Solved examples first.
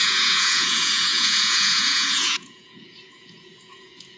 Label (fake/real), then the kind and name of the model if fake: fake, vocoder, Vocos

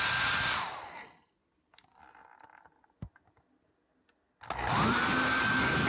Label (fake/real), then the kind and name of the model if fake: real